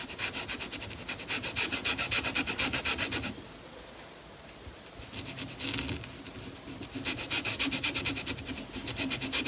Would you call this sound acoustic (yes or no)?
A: yes